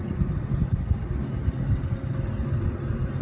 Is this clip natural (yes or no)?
yes